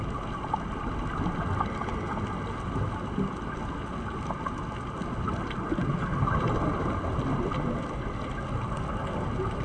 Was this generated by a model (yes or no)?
no